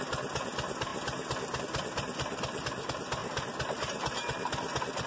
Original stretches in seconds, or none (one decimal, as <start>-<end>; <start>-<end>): 0.0-5.1